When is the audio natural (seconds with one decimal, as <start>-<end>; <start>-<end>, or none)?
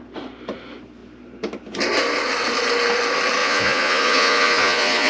0.0-3.4